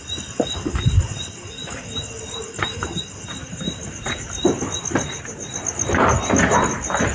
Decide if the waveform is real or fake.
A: real